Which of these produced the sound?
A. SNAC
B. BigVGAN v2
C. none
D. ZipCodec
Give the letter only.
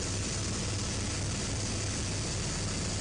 C